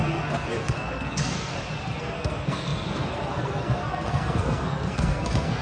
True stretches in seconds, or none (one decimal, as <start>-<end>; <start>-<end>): 1.5-2.0